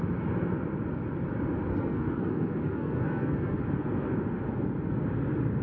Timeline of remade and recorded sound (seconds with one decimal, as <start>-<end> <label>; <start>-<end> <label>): 0.0-1.7 recorded; 1.7-3.6 remade; 3.6-5.6 recorded